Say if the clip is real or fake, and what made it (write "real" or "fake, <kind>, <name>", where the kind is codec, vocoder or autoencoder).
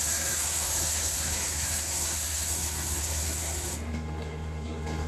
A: fake, codec, SNAC